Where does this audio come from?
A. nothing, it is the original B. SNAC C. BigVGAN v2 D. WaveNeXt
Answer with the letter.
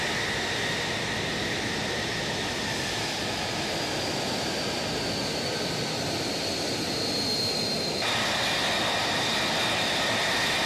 A